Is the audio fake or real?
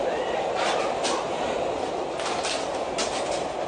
real